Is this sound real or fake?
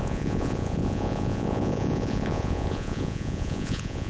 fake